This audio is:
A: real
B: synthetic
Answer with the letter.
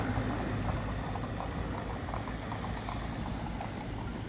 A